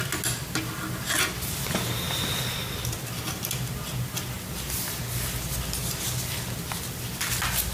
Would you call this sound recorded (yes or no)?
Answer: yes